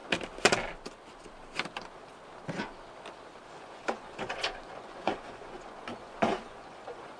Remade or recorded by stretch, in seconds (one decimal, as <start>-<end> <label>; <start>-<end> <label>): 0.0-3.5 recorded; 3.5-7.2 remade